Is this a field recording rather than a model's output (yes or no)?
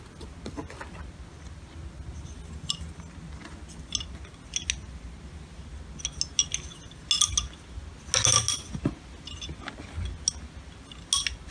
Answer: yes